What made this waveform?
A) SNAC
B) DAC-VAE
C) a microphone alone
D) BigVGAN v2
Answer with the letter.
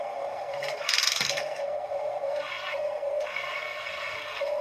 A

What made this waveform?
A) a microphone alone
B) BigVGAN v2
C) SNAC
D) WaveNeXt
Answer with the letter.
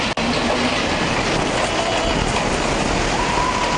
A